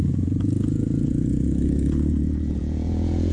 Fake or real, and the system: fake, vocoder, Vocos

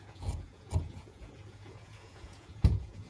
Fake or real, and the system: fake, vocoder, Vocos